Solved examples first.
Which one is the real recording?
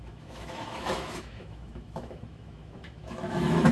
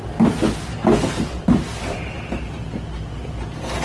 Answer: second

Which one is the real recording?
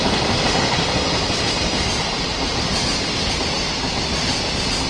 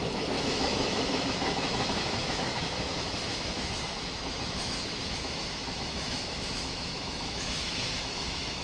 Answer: first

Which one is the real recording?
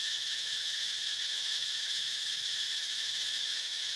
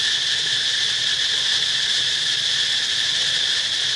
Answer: second